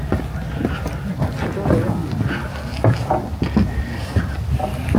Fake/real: real